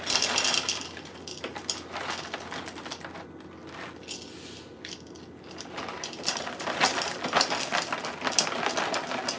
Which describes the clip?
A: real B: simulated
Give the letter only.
A